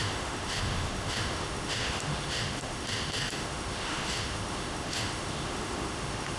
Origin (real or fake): fake